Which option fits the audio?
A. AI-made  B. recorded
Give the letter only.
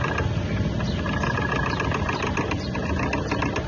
B